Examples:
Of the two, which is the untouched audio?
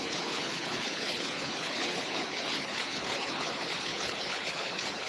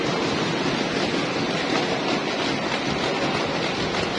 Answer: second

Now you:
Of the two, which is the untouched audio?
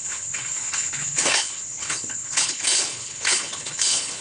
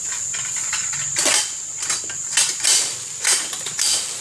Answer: second